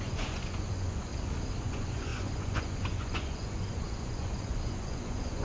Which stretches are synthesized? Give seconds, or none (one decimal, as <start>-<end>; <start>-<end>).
0.0-1.1; 1.6-5.4